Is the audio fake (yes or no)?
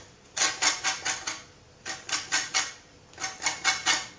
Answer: no